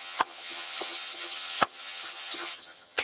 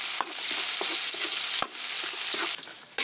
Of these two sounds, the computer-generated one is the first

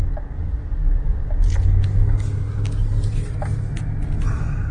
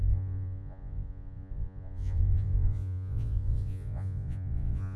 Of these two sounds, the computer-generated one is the second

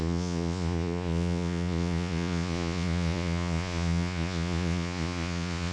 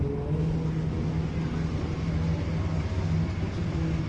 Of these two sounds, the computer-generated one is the first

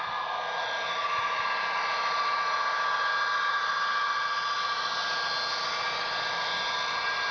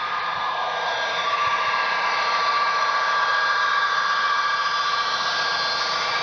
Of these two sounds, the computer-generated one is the second